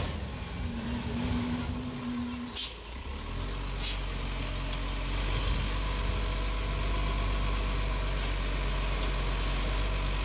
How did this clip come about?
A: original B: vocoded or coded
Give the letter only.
A